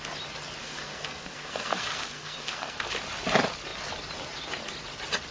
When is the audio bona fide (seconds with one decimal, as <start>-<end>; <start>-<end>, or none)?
0.0-0.6; 2.9-5.3